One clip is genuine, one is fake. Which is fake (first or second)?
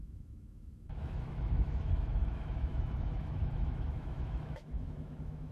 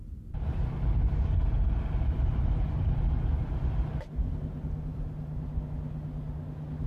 first